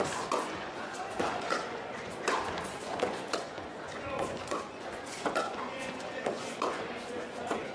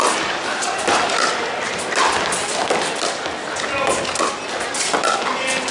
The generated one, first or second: first